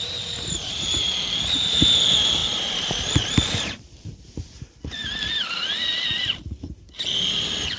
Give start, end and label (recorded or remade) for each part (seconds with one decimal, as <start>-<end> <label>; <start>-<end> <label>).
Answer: 0.0-2.4 recorded; 2.4-4.2 remade; 4.2-7.8 recorded